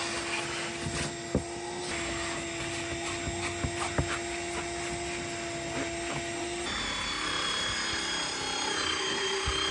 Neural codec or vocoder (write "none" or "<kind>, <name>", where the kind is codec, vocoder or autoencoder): none